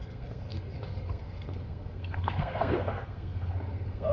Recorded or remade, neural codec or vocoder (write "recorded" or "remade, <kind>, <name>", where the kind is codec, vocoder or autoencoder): remade, codec, SNAC